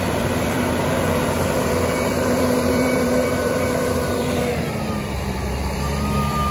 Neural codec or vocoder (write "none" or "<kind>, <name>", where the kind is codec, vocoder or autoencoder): vocoder, BigVGAN v2